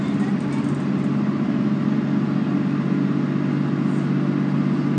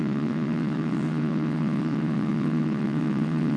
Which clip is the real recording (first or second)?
first